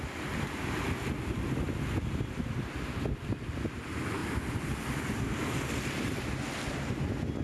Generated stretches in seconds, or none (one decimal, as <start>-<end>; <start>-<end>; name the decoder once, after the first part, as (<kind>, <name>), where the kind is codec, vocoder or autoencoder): none